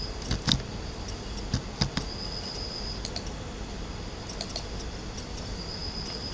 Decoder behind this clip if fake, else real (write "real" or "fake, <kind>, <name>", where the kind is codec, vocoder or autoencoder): real